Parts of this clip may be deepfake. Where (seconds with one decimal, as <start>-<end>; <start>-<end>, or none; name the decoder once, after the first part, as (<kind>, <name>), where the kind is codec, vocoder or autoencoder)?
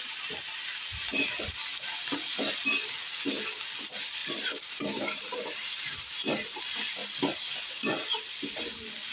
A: 0.9-1.5 (vocoder, BigVGAN v2); 4.2-6.6